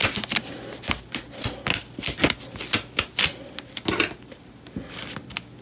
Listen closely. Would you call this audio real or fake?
real